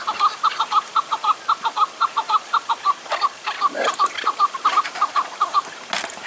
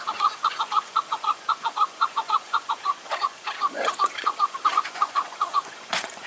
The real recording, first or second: first